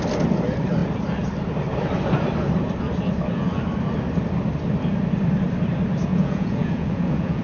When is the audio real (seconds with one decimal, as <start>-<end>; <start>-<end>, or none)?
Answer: 0.0-6.1